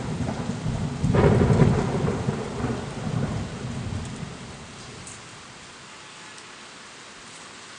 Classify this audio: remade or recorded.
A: recorded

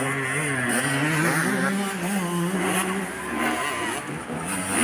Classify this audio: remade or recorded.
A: recorded